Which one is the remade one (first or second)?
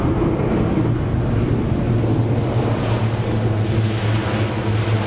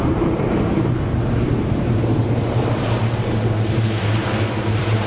second